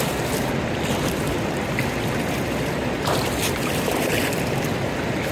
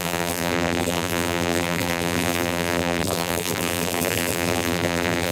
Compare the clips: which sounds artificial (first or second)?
second